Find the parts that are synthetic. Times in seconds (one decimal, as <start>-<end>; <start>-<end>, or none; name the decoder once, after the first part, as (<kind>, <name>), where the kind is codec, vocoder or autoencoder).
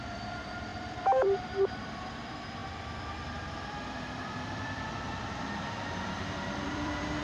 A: 0.0-7.2 (vocoder, BigVGAN v2)